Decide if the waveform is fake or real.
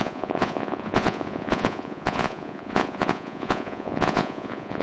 fake